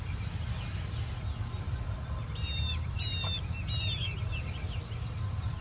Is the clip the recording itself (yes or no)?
yes